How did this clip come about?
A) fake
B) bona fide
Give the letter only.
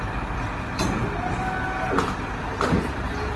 B